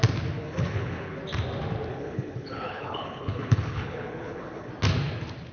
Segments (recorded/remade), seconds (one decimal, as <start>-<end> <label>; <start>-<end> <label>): 0.0-0.4 recorded; 0.4-1.2 remade; 1.2-1.9 recorded; 1.9-4.7 remade; 4.7-5.5 recorded